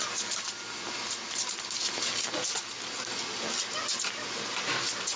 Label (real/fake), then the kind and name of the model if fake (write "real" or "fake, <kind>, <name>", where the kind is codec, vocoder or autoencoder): real